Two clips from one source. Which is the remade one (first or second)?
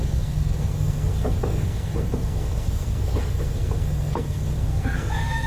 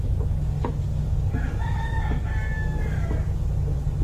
first